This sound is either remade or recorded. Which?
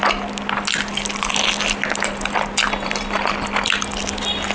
recorded